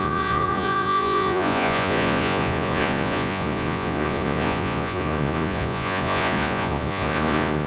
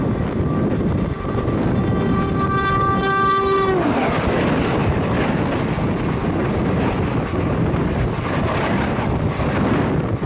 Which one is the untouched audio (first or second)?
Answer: second